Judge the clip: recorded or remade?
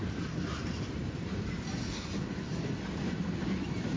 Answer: recorded